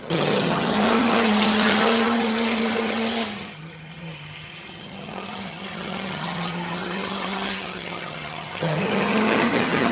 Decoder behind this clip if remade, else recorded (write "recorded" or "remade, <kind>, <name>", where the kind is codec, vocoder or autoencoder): remade, vocoder, HiFi-GAN